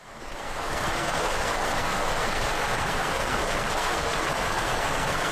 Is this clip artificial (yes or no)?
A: yes